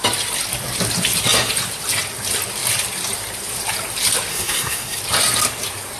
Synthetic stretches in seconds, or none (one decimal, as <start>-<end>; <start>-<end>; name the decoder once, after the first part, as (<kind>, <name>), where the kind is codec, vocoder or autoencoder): 4.3-5.0 (codec, SNAC)